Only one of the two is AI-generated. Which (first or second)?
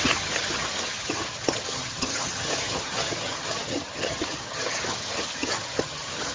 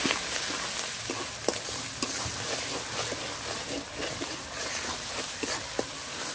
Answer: first